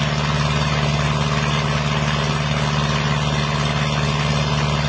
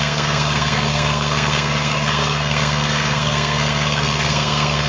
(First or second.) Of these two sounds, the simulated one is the second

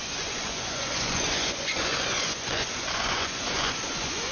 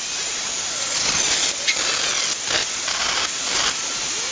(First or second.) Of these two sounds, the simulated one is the first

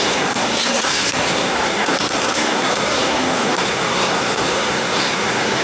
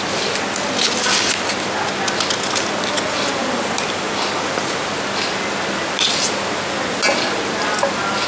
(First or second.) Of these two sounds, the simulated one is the first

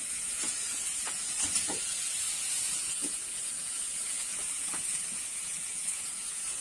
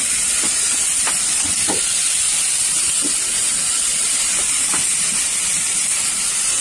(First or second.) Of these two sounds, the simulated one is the first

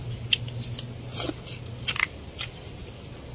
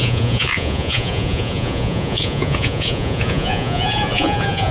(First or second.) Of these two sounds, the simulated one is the second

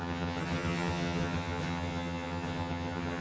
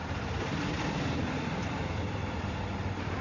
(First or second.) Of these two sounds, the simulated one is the first